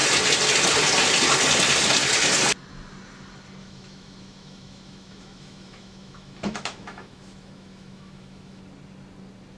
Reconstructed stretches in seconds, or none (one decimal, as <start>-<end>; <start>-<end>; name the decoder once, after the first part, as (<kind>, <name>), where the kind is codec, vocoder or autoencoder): 3.6-8.6 (autoencoder, DAC-VAE)